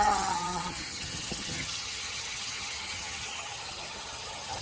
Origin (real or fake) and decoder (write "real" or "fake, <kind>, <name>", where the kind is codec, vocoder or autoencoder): fake, vocoder, HiFi-GAN